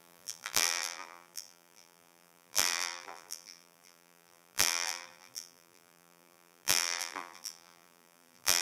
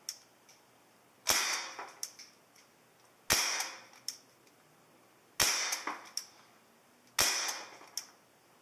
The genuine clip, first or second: second